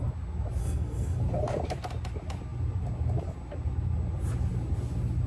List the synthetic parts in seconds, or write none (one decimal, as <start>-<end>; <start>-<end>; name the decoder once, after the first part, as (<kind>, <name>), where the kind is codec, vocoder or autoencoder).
0.6-1.2 (codec, SNAC)